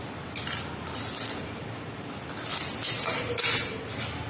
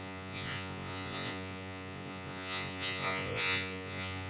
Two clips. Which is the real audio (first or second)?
first